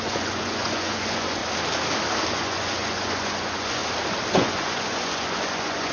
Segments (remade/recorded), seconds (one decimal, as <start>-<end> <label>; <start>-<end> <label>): 0.0-1.4 remade; 1.4-2.3 recorded; 2.3-3.8 remade; 3.8-4.3 recorded; 4.3-5.9 remade